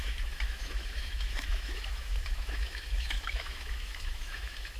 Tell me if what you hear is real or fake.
fake